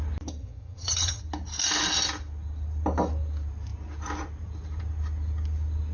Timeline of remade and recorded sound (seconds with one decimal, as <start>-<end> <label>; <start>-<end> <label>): 0.0-0.4 recorded; 0.4-1.2 remade; 1.2-5.9 recorded